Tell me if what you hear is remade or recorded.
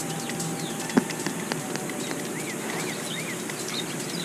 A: recorded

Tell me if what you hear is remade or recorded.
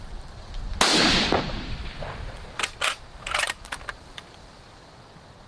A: recorded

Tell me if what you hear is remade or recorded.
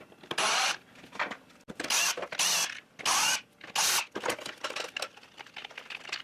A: recorded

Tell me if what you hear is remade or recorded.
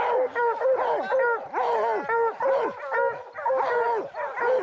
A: recorded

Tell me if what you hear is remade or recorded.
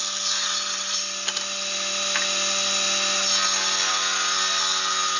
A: recorded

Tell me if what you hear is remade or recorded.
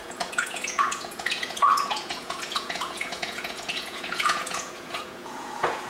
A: remade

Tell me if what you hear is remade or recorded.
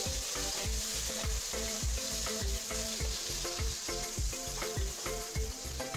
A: remade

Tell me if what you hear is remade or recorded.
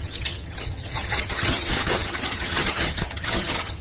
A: remade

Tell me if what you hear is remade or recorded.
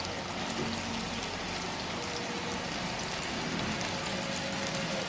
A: remade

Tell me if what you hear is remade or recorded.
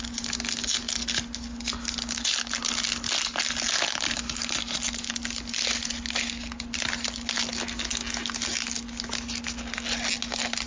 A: recorded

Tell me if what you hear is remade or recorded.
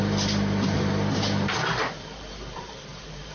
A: remade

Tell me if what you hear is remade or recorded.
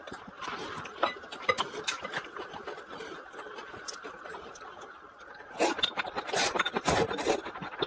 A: remade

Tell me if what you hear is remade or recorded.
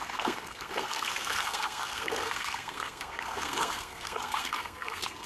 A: remade